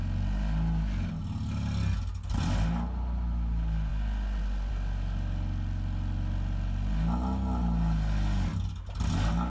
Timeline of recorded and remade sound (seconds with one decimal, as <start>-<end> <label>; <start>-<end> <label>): 0.0-9.5 recorded

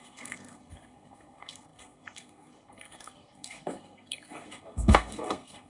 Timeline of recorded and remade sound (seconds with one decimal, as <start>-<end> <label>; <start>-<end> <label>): 0.0-5.7 remade